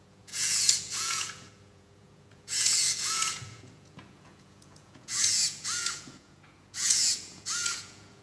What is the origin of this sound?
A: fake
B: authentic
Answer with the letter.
A